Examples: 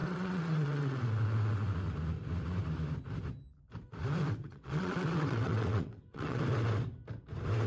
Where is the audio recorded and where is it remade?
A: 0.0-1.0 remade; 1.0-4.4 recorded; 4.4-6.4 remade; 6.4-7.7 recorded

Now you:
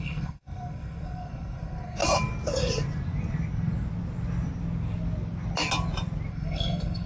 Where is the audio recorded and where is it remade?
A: 0.0-2.0 remade; 2.0-6.3 recorded; 6.3-7.1 remade

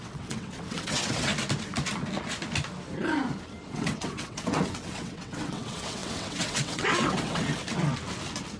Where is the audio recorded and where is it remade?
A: 0.0-1.3 remade; 1.3-3.6 recorded; 3.6-7.6 remade; 7.6-8.6 recorded

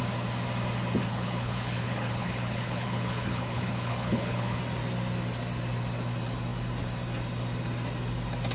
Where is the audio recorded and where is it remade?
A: 0.0-1.1 recorded; 1.1-4.6 remade; 4.6-8.5 recorded

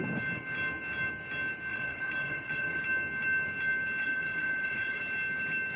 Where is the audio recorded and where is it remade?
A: 0.0-1.7 recorded; 1.7-2.8 remade; 2.8-4.0 recorded; 4.0-5.0 remade; 5.0-5.8 recorded

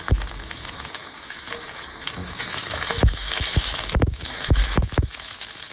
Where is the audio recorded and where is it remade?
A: 0.0-5.7 remade